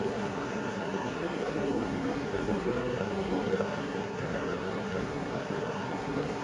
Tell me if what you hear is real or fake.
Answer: fake